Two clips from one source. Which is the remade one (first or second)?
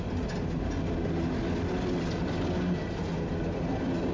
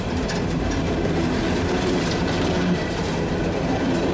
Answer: second